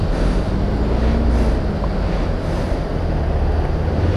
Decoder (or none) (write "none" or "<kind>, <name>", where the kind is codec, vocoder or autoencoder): none